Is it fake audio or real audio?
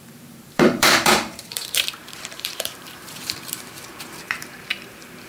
fake